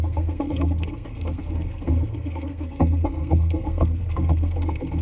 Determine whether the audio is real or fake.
fake